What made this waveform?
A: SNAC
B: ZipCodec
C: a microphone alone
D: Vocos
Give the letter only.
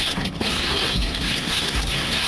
A